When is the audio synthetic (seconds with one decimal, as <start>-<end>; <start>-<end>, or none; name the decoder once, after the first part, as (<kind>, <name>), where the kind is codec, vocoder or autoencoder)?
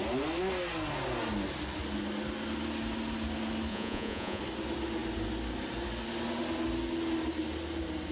3.7-4.4 (vocoder, Vocos)